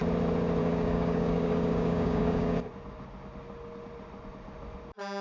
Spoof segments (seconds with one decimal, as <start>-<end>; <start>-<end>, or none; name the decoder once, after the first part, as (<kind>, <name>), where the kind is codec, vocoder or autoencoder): 0.6-2.6 (codec, DAC)